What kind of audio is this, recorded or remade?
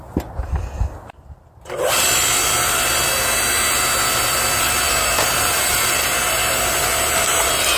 recorded